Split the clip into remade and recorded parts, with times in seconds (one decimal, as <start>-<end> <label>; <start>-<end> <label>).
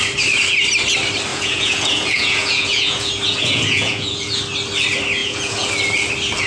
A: 0.0-1.3 recorded; 1.3-4.4 remade; 4.4-5.2 recorded; 5.2-5.7 remade; 5.7-6.5 recorded